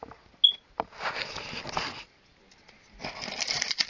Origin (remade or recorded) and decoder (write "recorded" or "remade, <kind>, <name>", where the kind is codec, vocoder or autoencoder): recorded